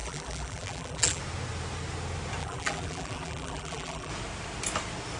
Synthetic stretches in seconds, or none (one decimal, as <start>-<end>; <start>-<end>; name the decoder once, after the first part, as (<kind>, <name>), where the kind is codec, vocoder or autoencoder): 0.0-1.2 (vocoder, BigVGAN v2); 2.4-4.1